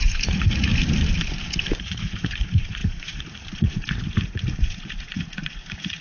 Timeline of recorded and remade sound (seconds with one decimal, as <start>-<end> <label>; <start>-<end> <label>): 0.0-0.7 remade; 0.7-1.8 recorded; 1.8-6.0 remade